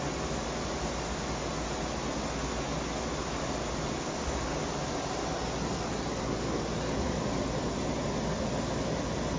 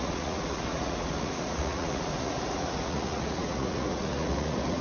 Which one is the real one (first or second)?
first